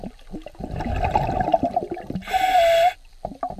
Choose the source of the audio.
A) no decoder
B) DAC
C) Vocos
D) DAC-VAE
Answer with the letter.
A